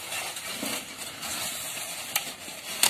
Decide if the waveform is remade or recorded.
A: recorded